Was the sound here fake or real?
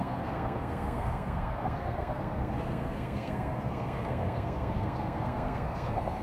fake